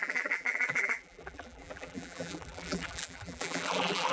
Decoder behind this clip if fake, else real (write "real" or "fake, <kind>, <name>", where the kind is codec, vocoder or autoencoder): fake, vocoder, BigVGAN v2